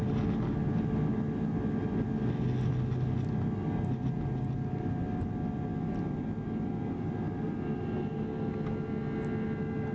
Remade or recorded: recorded